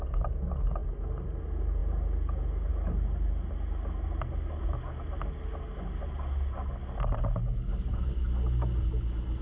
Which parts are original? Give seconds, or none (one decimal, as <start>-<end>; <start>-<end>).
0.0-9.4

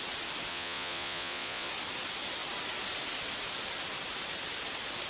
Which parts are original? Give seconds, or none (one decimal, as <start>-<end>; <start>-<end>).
0.0-0.5; 1.7-5.1

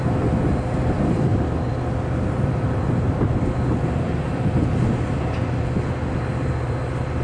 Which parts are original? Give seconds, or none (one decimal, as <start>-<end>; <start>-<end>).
0.0-7.2

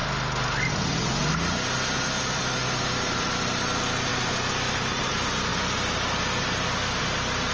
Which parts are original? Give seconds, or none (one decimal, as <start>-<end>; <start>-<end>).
0.0-7.5